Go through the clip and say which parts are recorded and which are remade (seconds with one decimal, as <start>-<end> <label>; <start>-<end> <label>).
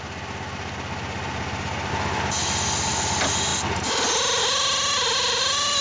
0.0-5.8 recorded